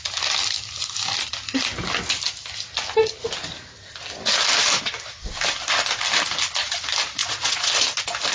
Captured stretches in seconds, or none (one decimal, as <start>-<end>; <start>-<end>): 0.0-7.2; 7.7-8.3